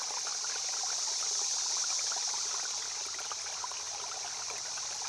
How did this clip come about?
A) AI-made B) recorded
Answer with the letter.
B